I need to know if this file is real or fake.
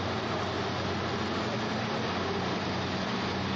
real